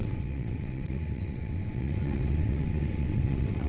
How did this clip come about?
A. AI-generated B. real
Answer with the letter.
A